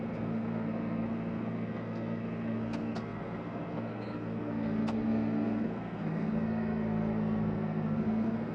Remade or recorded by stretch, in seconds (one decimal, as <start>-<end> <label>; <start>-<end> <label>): 0.0-8.5 remade